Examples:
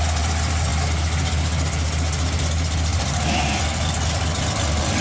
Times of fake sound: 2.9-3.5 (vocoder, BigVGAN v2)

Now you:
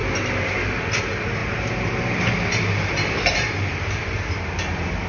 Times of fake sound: 1.0-5.1 (vocoder, BigVGAN v2)

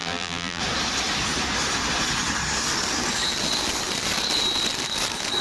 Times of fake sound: 0.0-0.6 (vocoder, BigVGAN v2)

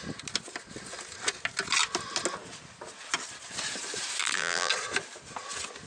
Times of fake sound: 4.2-4.7 (vocoder, BigVGAN v2)

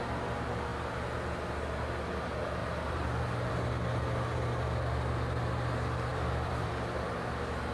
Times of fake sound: 2.6-3.5 (vocoder, BigVGAN v2); 6.1-6.7

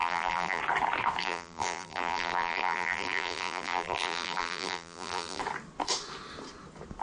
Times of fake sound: 0.0-0.6 (vocoder, BigVGAN v2); 1.2-5.4

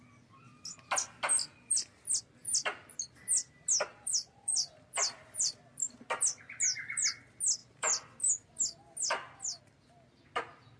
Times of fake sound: 1.3-2.2 (vocoder, BigVGAN v2); 3.9-5.9; 7.6-8.2

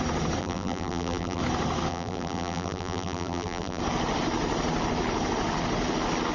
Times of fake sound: 0.4-1.4 (vocoder, BigVGAN v2); 1.9-3.8